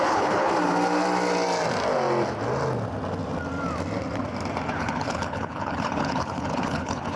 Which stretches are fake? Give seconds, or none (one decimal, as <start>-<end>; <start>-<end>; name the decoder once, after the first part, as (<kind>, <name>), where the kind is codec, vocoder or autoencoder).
0.0-0.5 (codec, HILCodec); 4.8-7.2

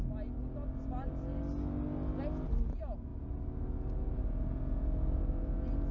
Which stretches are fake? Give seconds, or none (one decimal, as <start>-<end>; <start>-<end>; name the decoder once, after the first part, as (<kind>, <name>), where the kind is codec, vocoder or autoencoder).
none

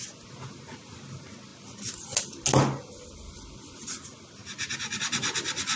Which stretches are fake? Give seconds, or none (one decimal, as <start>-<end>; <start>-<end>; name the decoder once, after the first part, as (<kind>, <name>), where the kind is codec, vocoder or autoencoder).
none

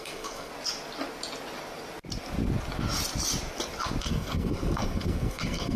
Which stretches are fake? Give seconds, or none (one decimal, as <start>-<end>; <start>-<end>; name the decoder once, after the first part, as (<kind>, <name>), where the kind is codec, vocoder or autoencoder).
0.0-0.5 (codec, SNAC); 4.0-5.8

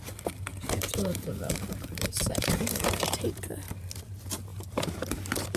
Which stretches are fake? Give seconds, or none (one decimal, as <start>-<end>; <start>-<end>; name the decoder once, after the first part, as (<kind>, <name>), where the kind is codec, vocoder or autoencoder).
1.3-3.4 (vocoder, BigVGAN v2); 4.5-5.0

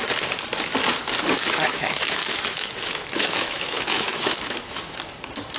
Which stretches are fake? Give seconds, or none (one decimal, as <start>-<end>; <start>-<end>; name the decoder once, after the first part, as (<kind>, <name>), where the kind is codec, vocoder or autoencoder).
1.4-4.8 (autoencoder, DAC-VAE)

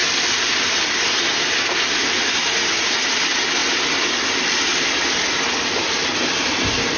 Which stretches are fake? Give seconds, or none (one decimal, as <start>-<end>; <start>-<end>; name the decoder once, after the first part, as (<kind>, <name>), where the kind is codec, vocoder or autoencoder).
0.0-3.2 (vocoder, BigVGAN v2); 3.6-5.1